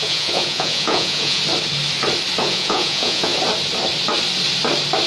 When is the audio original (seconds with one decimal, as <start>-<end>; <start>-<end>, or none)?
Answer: 1.4-2.4; 3.3-5.1